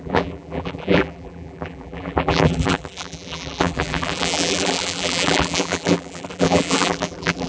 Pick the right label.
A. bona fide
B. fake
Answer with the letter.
B